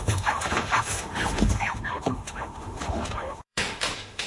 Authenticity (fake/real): fake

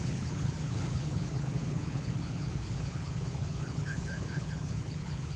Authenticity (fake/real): fake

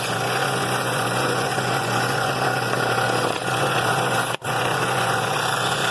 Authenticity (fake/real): fake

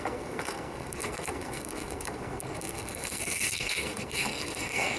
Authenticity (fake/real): fake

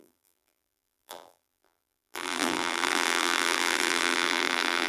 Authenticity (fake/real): fake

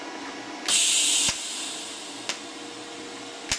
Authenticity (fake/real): real